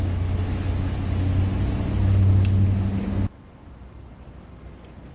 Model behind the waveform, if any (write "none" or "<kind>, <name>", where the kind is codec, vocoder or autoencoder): none